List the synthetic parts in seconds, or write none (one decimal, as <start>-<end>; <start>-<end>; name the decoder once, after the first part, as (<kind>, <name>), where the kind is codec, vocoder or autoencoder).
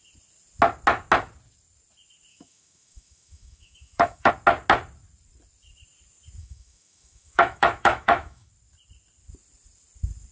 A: 2.3-4.3 (autoencoder, DAC-VAE); 6.4-8.5